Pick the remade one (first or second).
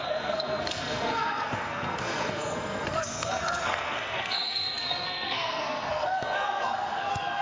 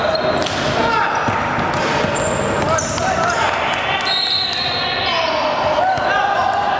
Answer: first